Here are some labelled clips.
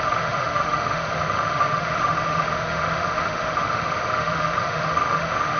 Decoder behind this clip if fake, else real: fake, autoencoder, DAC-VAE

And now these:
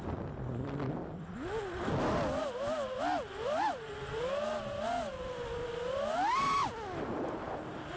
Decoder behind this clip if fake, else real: real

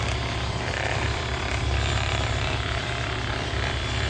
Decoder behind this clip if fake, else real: fake, vocoder, BigVGAN v2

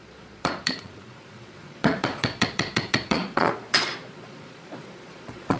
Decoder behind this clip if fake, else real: fake, vocoder, Vocos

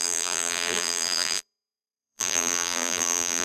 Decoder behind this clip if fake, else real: fake, vocoder, BigVGAN v2